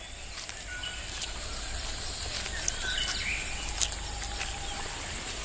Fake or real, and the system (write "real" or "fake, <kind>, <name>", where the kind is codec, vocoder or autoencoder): real